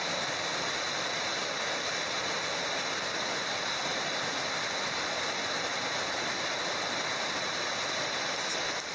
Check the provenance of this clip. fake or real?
real